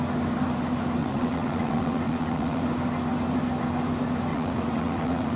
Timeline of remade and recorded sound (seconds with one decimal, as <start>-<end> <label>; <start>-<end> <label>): 0.0-1.0 recorded; 1.0-2.6 remade; 2.6-4.3 recorded; 4.3-5.4 remade